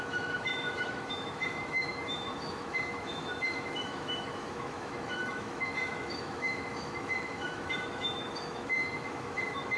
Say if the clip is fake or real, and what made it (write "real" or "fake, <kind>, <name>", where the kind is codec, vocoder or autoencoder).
fake, autoencoder, DAC-VAE